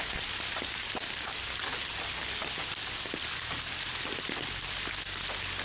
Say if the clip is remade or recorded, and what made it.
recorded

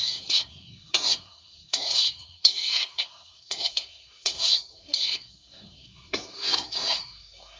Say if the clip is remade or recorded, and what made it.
remade, codec, SNAC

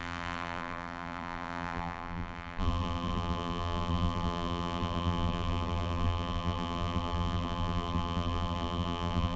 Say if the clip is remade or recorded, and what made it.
remade, vocoder, BigVGAN v2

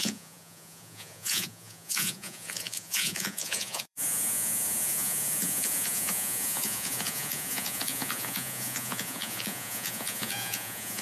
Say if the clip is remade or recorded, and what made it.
remade, vocoder, Vocos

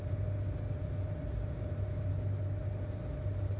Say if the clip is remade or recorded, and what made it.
recorded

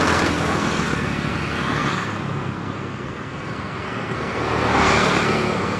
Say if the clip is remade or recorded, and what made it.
remade, codec, SNAC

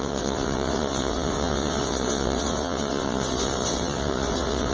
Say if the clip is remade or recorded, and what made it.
remade, vocoder, WaveNeXt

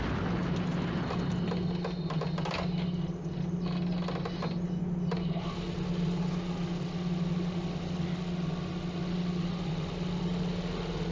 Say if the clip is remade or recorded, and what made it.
recorded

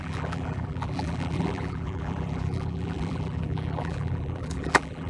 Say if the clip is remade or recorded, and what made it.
remade, vocoder, BigVGAN v2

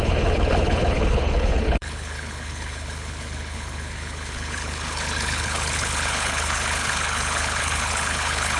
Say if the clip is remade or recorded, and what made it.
remade, codec, HILCodec